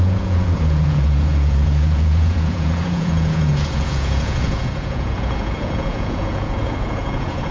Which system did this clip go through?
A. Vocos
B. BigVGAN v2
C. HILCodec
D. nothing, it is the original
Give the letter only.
A